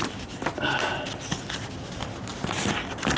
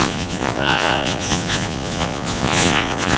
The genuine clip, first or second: first